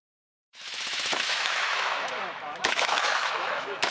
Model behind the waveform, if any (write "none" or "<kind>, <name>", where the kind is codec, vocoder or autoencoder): autoencoder, DAC-VAE